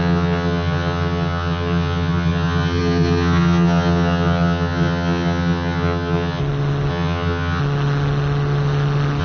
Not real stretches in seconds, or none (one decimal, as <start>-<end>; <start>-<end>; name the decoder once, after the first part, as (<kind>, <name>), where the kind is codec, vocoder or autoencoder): 0.0-6.4 (vocoder, HiFi-GAN); 6.9-7.6